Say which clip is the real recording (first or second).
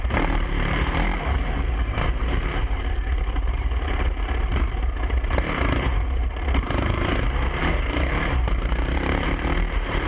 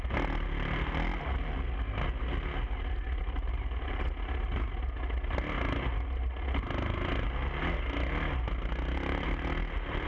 second